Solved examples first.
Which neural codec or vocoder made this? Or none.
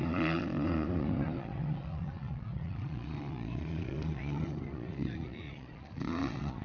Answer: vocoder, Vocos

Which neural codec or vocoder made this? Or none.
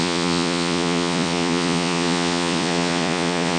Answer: vocoder, Vocos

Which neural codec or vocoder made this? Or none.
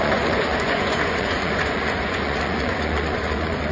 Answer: vocoder, Vocos